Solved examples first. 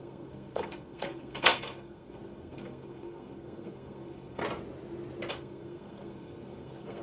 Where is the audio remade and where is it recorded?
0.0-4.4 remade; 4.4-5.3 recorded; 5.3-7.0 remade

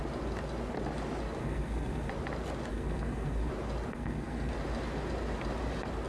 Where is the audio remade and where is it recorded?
0.0-1.4 recorded; 1.4-2.1 remade; 2.1-2.7 recorded; 2.7-3.5 remade; 3.5-3.9 recorded; 3.9-4.5 remade; 4.5-6.1 recorded